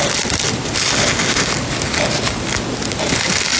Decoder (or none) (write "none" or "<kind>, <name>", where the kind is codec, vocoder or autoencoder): none